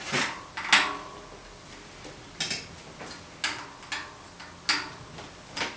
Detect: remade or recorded recorded